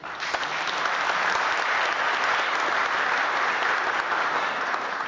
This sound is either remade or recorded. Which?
recorded